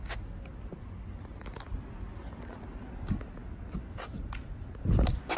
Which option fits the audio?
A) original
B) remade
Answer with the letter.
A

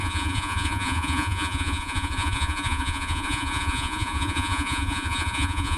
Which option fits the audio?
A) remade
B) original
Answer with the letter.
A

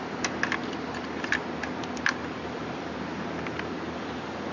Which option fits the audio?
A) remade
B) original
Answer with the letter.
A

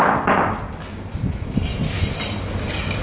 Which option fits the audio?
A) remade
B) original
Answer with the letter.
B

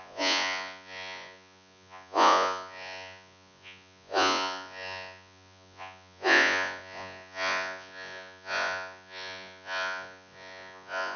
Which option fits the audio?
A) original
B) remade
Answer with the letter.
B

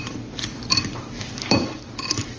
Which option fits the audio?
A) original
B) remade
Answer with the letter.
B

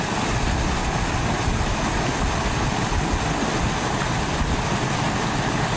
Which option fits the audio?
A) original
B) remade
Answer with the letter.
A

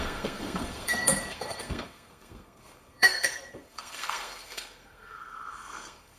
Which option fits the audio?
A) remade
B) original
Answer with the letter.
A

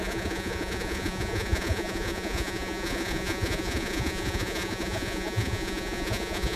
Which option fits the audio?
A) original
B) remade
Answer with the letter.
B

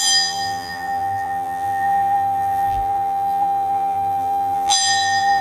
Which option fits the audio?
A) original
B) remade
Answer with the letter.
B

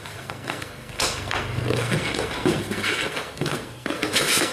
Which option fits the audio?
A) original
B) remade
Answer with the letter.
B